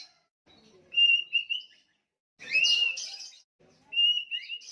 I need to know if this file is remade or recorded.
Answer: recorded